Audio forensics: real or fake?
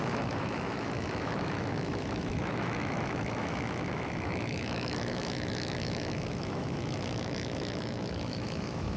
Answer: fake